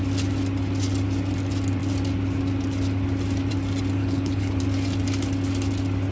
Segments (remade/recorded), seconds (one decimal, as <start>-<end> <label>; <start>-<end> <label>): 0.0-4.0 recorded; 4.0-4.6 remade; 4.6-6.1 recorded